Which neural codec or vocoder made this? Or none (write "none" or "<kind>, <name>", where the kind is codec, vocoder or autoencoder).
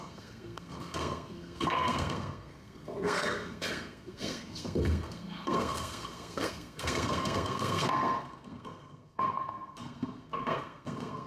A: codec, SNAC